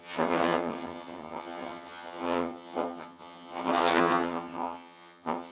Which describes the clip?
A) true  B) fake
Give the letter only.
B